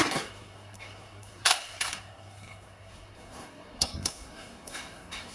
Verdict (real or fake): fake